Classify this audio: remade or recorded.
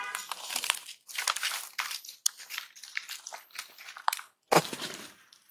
remade